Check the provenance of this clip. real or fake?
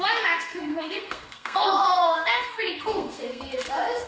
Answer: fake